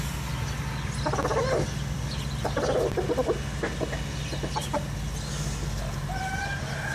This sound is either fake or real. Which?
real